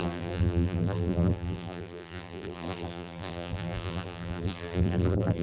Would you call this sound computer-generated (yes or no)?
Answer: yes